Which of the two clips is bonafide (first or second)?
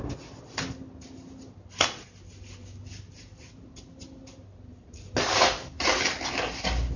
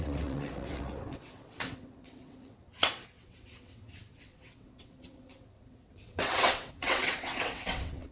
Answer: first